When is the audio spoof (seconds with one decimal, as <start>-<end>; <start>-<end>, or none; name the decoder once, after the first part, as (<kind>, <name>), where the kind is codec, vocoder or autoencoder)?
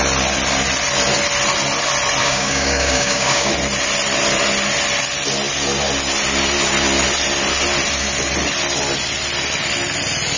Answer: 2.2-3.5 (codec, DAC)